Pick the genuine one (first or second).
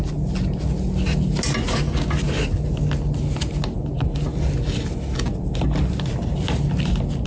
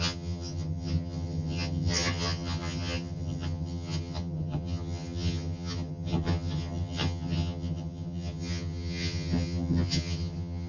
first